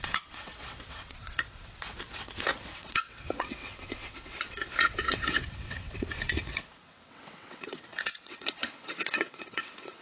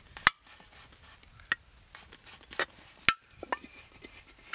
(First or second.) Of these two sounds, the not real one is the first